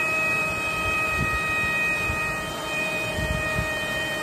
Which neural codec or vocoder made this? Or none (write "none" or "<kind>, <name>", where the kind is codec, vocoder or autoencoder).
vocoder, BigVGAN v2